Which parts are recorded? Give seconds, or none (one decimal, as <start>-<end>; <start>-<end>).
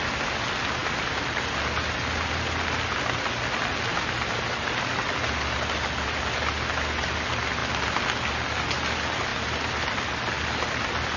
0.0-11.2